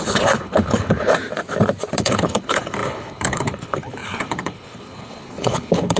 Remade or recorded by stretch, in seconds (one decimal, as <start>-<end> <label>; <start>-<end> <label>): 0.0-1.1 remade; 1.1-2.0 recorded; 2.0-6.0 remade